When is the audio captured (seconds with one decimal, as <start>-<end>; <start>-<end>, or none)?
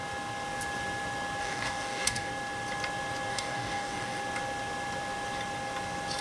0.0-1.4; 2.3-3.3; 4.2-6.2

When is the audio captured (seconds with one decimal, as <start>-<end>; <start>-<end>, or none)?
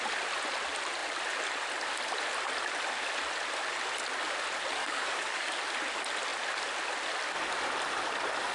0.0-4.8; 5.6-8.5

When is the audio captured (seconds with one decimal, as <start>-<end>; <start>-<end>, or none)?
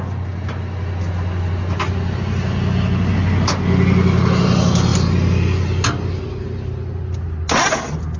0.0-8.2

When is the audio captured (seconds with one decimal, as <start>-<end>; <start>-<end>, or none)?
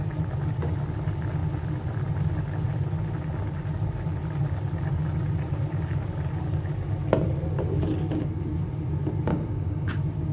0.0-9.3; 9.9-10.3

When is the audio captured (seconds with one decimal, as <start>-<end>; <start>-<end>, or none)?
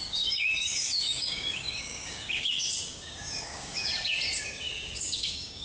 3.9-4.4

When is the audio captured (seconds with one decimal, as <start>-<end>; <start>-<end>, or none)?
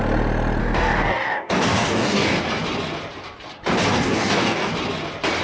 0.0-0.6; 2.4-3.9; 4.7-5.4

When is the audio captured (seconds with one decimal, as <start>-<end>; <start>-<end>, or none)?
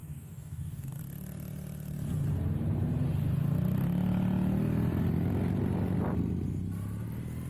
1.0-7.5